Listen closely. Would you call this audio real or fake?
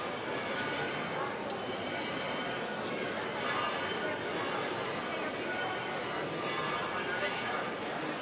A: real